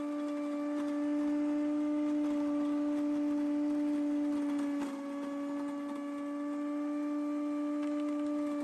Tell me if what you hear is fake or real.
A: real